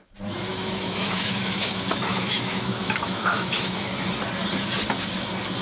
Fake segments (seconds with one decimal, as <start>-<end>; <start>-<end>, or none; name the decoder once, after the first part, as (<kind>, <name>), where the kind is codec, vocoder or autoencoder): 0.5-3.9 (autoencoder, DAC-VAE)

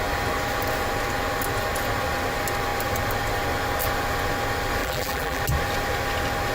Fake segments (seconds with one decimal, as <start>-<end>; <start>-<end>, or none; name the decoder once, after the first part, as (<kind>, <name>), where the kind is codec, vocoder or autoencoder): 4.8-5.4 (vocoder, BigVGAN v2)

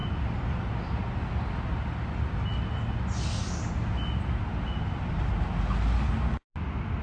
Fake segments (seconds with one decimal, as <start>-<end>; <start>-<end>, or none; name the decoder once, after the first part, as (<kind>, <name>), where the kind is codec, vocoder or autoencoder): none